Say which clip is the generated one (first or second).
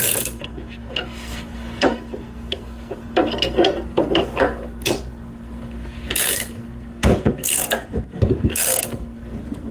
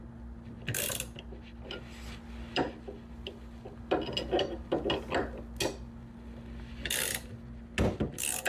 first